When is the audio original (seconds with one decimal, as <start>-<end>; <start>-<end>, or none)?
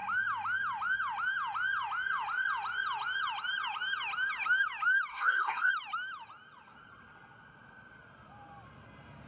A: 0.0-5.1; 5.7-9.3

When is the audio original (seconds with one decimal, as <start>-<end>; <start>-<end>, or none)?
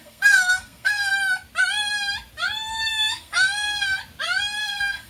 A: 1.1-2.9; 4.0-4.6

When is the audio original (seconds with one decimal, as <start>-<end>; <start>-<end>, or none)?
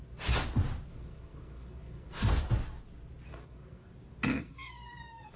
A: 0.0-0.9; 2.3-3.3; 3.9-4.3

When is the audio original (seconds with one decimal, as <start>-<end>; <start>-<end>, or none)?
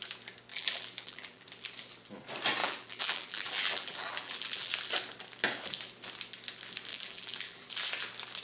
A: 0.0-0.5; 1.5-2.6; 4.7-6.9; 7.7-8.4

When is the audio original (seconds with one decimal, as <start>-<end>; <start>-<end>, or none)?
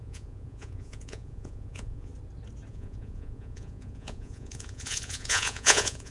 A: 2.1-2.7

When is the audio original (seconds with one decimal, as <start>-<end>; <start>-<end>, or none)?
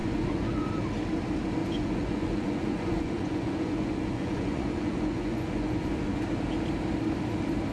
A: 0.7-1.6; 6.2-7.7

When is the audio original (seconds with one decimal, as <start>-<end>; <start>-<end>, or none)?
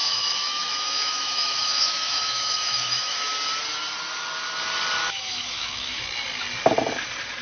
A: 3.3-5.0; 6.0-7.4